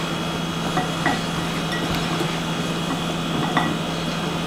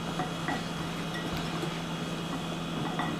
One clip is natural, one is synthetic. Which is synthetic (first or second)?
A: second